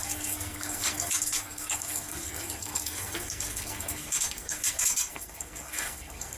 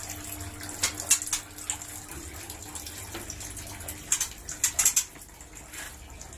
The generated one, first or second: first